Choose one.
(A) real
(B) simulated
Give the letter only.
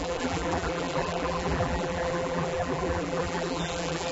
B